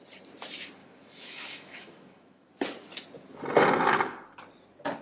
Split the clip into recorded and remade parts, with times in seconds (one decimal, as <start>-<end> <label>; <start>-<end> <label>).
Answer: 0.0-0.8 recorded; 0.8-2.5 remade; 2.5-5.0 recorded